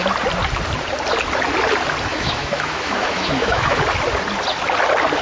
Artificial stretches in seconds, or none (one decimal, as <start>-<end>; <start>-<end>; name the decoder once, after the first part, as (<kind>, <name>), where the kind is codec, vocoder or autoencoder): 2.1-3.8 (autoencoder, DAC-VAE)